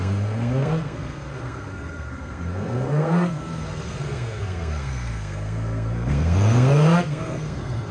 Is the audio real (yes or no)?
no